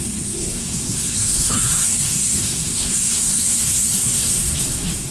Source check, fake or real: fake